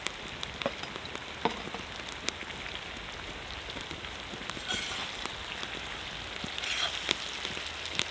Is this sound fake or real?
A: real